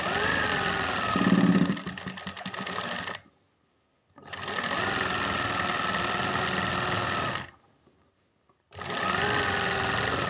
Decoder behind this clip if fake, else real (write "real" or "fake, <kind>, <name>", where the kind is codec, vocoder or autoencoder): real